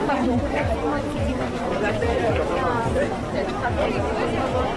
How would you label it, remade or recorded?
remade